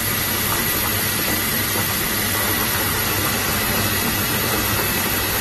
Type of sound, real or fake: real